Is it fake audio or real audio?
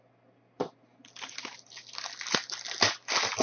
real